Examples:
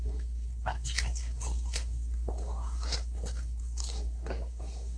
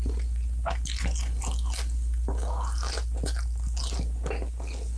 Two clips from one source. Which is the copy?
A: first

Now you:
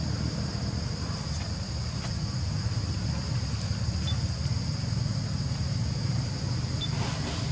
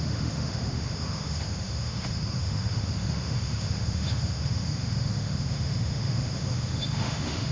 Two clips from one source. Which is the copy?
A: second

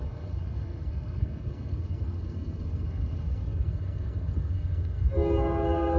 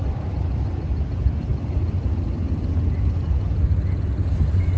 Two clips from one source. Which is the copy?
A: first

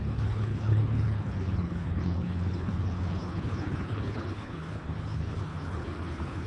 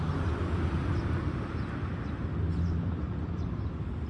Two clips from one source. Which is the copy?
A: first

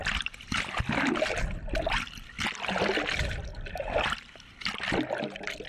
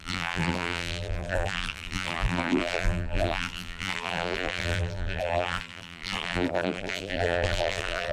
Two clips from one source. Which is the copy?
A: second